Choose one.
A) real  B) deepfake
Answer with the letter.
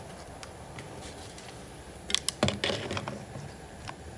A